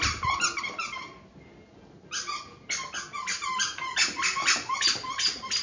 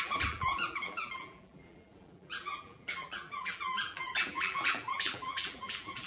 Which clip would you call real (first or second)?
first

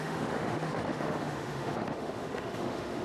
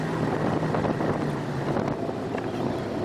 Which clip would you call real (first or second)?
second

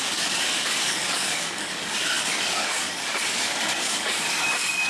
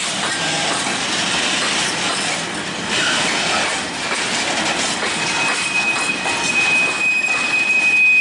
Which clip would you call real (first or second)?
second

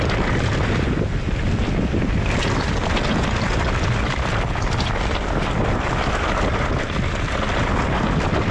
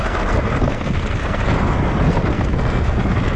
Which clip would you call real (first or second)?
first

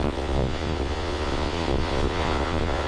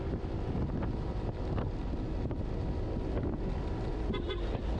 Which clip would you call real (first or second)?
second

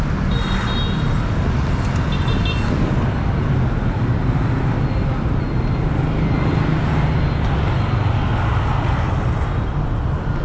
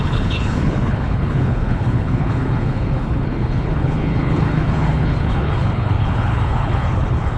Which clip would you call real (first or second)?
first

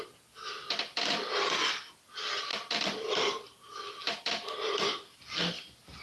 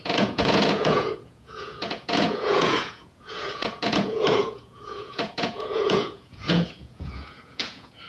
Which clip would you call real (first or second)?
first